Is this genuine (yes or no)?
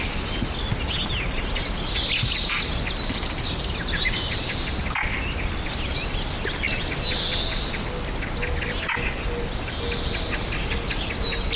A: yes